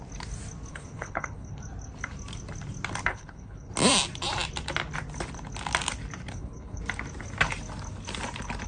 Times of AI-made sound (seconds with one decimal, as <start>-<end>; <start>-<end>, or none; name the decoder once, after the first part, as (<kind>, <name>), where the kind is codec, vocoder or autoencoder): 0.7-1.6 (codec, HILCodec); 3.1-3.7; 6.3-6.8